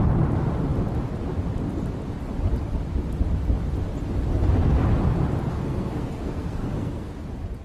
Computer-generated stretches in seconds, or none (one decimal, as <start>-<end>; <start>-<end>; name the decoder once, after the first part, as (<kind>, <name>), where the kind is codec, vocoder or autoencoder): 5.5-7.1 (codec, SNAC)